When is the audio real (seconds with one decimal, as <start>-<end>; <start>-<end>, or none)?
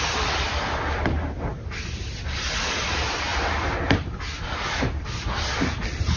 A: 0.0-6.2